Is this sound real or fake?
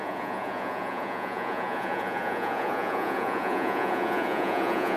fake